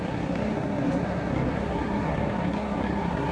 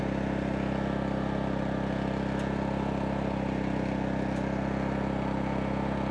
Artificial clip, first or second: first